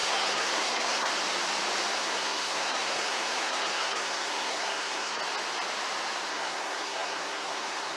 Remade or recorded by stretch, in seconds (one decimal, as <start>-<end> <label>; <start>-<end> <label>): 0.0-1.1 remade; 1.1-1.9 recorded; 1.9-5.2 remade; 5.2-6.3 recorded; 6.3-8.0 remade